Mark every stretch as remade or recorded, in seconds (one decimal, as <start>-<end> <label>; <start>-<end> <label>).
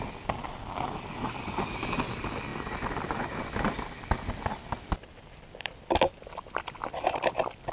0.0-7.7 recorded